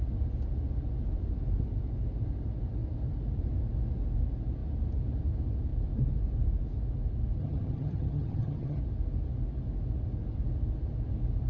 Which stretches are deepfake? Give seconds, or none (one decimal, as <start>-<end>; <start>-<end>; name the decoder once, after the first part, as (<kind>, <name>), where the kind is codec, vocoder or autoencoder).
7.4-8.8 (vocoder, HiFi-GAN)